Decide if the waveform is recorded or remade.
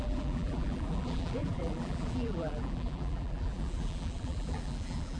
remade